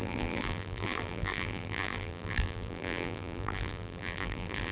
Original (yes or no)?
no